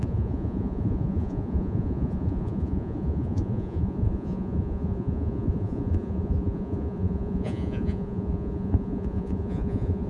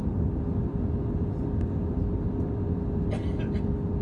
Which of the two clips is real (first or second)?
second